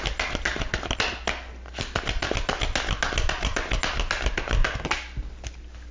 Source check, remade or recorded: recorded